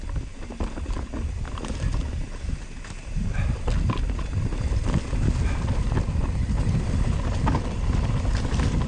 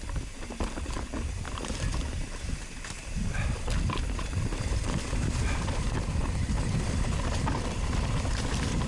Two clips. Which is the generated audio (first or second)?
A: second